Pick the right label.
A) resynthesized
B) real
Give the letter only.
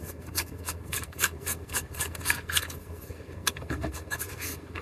A